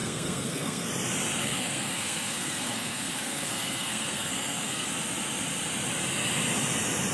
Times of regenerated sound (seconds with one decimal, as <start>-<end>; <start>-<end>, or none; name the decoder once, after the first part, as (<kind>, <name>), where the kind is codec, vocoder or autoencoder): 0.0-0.9 (codec, SNAC); 1.4-4.9